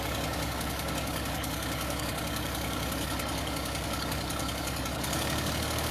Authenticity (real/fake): fake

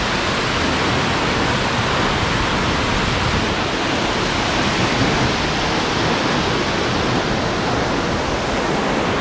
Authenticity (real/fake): real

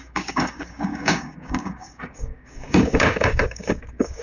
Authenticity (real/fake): fake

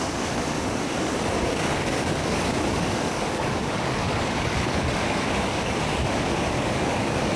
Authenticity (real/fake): fake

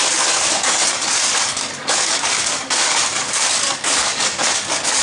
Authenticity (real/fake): fake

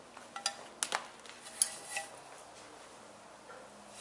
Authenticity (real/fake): real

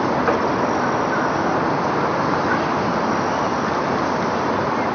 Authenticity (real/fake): real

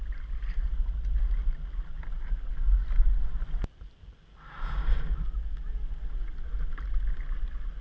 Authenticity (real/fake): real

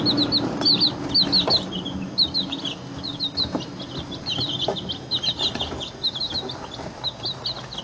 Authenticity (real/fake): real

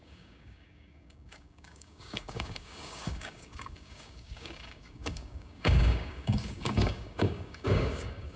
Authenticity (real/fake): fake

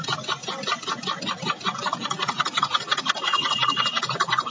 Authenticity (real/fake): real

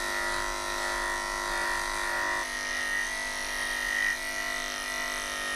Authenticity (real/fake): real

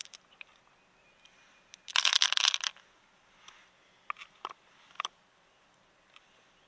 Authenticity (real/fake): real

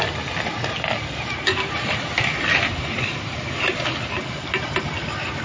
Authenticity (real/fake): real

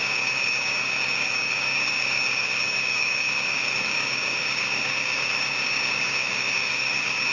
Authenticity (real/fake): fake